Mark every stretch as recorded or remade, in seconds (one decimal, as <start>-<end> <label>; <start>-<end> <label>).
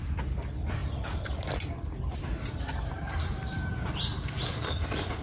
0.0-5.2 remade